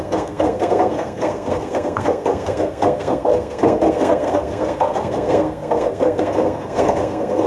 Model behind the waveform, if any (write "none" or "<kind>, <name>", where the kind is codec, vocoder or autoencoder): codec, SNAC